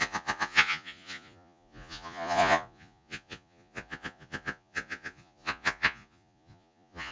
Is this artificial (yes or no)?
yes